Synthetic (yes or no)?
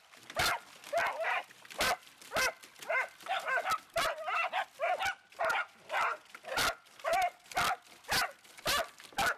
no